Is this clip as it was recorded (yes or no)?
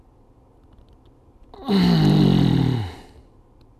yes